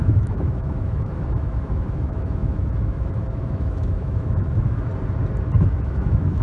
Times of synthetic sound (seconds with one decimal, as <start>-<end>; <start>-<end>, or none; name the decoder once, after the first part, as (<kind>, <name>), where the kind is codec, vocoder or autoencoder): 0.0-4.9 (autoencoder, DAC-VAE); 5.6-6.4

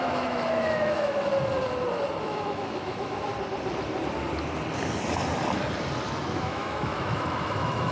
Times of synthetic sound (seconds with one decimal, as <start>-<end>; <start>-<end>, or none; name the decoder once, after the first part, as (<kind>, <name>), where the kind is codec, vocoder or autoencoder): 0.0-1.3 (autoencoder, DAC-VAE); 2.2-3.3; 6.4-7.9

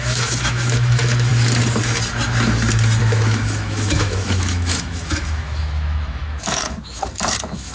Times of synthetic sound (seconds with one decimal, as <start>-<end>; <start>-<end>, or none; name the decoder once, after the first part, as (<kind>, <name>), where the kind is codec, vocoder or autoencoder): 0.0-1.3 (autoencoder, DAC-VAE); 3.0-7.7

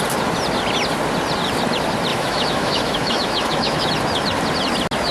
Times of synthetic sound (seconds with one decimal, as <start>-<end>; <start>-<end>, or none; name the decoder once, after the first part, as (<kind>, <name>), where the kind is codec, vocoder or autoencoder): 2.1-3.9 (autoencoder, DAC-VAE)